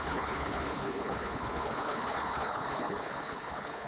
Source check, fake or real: fake